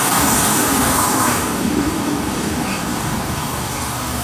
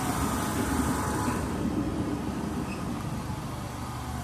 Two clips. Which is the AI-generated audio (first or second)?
first